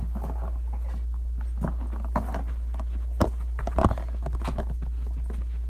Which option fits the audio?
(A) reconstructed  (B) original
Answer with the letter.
B